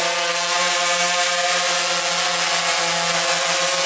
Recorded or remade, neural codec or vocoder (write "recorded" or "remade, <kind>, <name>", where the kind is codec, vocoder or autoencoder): recorded